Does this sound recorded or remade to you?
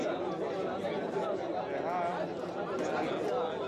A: recorded